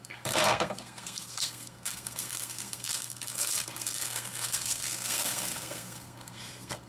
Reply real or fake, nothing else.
fake